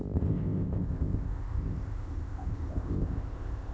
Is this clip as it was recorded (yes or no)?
no